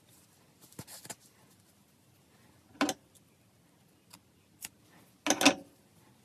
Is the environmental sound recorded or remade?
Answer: recorded